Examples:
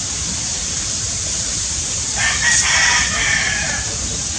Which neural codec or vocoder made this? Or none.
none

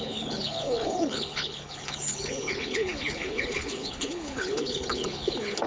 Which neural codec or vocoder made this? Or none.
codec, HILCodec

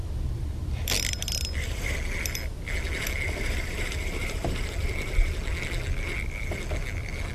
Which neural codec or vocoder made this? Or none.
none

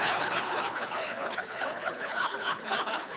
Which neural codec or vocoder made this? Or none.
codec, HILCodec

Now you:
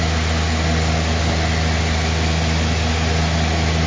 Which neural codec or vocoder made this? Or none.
none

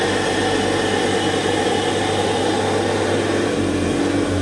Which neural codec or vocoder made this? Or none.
none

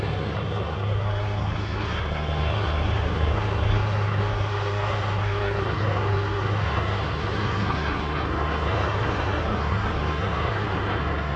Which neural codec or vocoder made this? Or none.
codec, SNAC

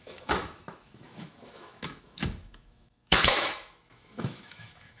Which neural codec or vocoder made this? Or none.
autoencoder, DAC-VAE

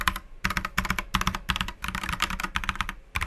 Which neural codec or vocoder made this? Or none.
none